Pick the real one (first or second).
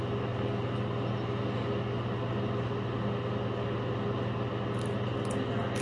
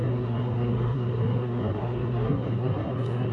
first